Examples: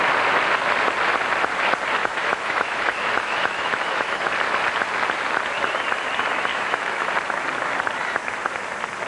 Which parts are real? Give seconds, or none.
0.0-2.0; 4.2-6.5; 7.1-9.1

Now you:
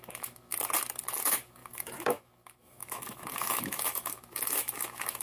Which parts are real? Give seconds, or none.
0.5-1.2

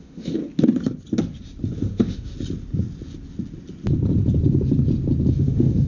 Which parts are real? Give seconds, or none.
0.4-1.8; 2.3-5.3

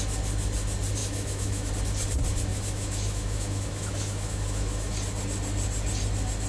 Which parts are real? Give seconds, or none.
0.0-1.0; 1.7-2.5; 4.9-6.5

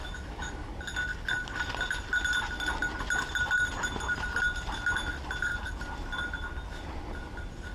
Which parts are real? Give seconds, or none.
0.7-7.7

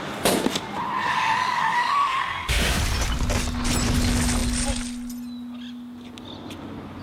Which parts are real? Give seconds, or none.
0.0-1.1; 2.8-7.0

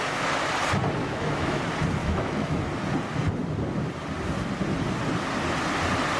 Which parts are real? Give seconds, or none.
0.0-1.0; 1.6-2.0; 2.6-6.2